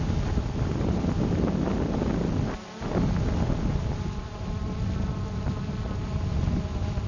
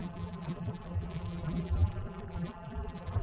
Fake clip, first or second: second